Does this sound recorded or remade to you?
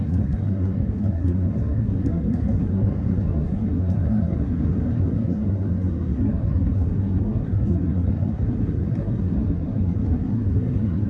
remade